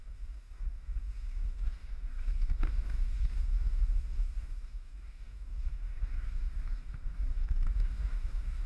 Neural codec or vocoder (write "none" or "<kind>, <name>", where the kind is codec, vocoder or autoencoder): codec, DAC